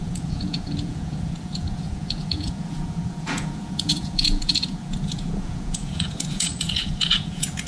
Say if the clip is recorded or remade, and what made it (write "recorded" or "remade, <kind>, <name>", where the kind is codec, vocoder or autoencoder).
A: remade, vocoder, Vocos